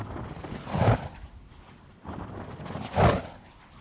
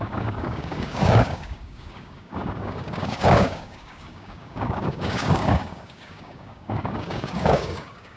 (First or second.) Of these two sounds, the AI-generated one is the second